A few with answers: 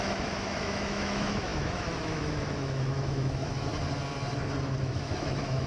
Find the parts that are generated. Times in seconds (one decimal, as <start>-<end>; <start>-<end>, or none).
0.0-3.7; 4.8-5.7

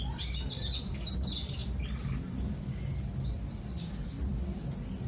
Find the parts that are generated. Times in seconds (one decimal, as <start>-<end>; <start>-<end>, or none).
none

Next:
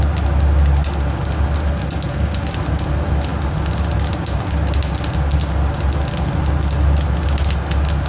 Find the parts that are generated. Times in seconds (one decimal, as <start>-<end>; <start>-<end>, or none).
none

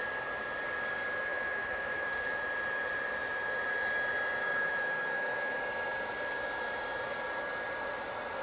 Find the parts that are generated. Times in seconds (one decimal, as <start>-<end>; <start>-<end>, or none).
1.3-2.4; 4.4-5.6

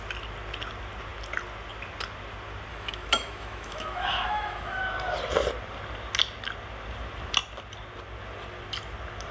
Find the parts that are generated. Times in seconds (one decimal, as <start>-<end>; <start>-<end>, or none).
2.7-4.8